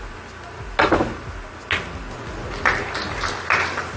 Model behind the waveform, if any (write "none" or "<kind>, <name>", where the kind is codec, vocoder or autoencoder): none